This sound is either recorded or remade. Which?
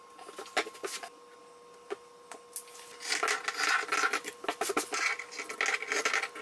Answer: recorded